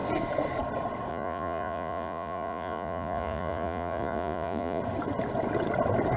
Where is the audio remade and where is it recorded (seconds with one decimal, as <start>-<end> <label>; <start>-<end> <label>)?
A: 0.0-1.1 recorded; 1.1-4.8 remade; 4.8-6.2 recorded

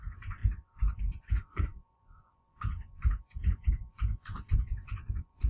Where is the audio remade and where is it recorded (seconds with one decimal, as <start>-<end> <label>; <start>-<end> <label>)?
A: 0.0-0.4 remade; 0.4-1.0 recorded; 1.0-5.5 remade

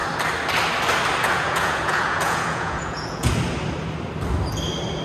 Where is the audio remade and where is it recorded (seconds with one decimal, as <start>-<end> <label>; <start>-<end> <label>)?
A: 0.0-1.2 recorded; 1.2-3.3 remade; 3.3-5.0 recorded

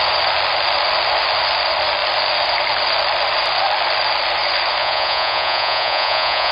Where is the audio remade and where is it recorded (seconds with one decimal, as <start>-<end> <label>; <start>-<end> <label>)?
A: 0.0-4.8 recorded; 4.8-6.5 remade